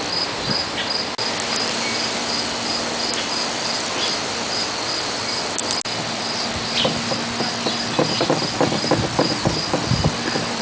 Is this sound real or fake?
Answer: real